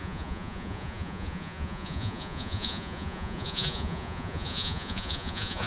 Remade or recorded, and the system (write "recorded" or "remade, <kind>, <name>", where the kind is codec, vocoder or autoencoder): remade, vocoder, Vocos